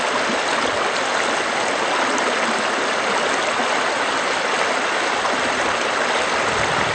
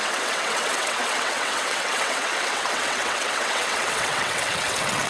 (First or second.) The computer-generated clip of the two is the second